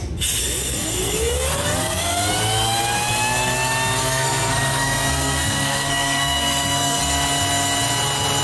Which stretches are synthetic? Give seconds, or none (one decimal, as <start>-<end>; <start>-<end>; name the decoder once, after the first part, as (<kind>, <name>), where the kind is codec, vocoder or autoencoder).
0.4-2.3 (codec, SNAC); 4.0-7.0